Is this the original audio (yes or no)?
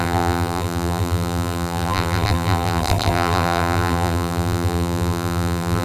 no